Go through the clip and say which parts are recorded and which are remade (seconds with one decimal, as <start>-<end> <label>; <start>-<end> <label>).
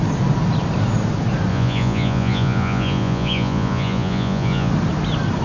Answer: 0.0-1.5 recorded; 1.5-4.7 remade; 4.7-5.4 recorded